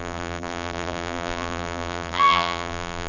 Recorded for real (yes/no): no